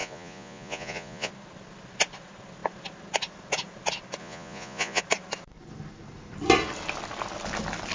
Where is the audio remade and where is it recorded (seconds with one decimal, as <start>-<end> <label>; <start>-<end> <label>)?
0.0-1.3 remade; 1.3-4.2 recorded; 4.2-5.0 remade; 5.0-7.9 recorded